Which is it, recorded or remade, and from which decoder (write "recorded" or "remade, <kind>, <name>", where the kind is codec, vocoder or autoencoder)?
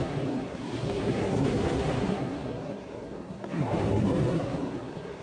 remade, codec, SNAC